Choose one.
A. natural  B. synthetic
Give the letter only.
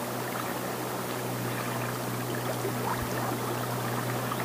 A